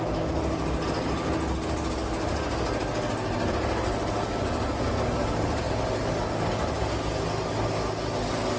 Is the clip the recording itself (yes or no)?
yes